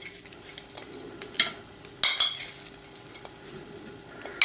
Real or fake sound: real